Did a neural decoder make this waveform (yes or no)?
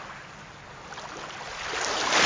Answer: no